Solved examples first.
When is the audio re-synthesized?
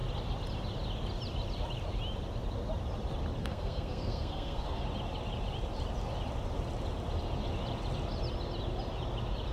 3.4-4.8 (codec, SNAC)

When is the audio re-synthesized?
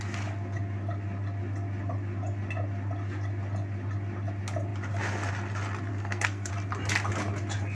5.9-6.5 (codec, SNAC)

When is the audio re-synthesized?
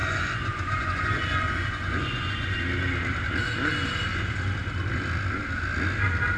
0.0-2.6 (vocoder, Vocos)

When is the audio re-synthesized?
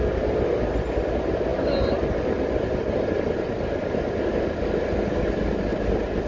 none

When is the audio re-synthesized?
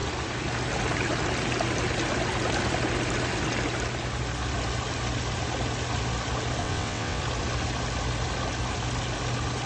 6.6-7.2 (vocoder, WaveNeXt)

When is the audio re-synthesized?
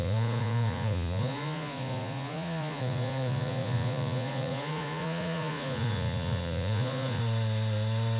0.0-7.2 (vocoder, Vocos)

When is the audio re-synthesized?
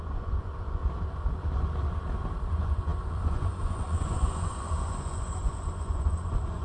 0.0-0.8 (vocoder, Vocos); 2.5-6.6